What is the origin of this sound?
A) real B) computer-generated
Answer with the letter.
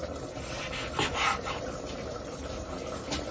A